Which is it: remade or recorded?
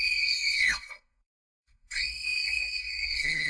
remade